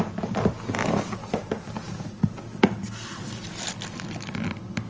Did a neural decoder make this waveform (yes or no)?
no